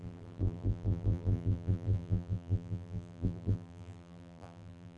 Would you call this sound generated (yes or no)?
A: yes